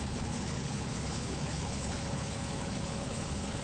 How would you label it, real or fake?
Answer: fake